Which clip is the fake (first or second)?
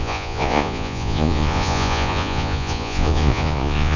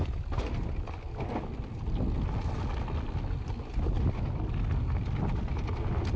first